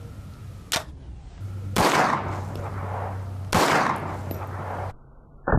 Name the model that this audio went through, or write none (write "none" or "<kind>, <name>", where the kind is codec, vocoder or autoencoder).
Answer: none